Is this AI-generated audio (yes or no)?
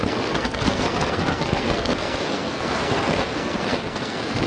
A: yes